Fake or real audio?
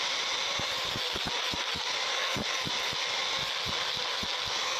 real